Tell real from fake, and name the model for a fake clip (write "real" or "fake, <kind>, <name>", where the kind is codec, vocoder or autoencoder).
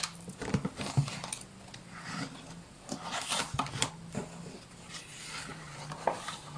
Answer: real